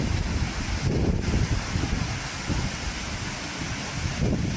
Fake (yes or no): no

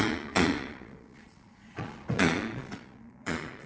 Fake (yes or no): yes